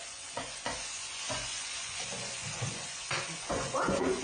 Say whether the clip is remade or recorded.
remade